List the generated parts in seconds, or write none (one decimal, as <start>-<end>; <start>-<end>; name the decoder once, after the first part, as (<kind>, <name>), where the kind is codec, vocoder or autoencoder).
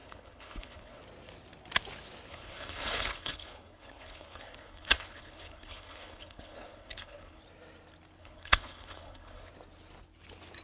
0.0-1.0 (codec, HILCodec); 2.3-7.4; 8.2-9.5